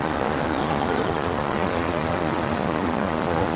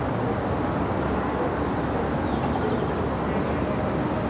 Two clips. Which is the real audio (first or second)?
second